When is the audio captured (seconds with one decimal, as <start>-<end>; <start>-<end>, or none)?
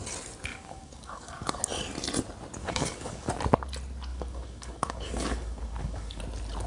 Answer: 0.0-0.5; 1.6-2.6; 3.3-4.1; 6.2-6.7